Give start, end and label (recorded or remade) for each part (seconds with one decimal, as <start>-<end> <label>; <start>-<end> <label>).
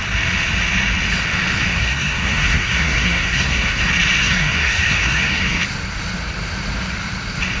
0.0-1.7 recorded; 1.7-3.8 remade; 3.8-4.2 recorded; 4.2-5.6 remade; 5.6-7.6 recorded